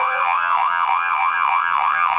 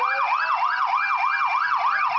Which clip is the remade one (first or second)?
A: first